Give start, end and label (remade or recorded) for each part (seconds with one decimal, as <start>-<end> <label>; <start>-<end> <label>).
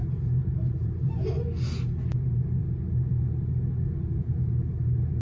0.0-0.4 recorded; 0.4-1.2 remade; 1.2-5.2 recorded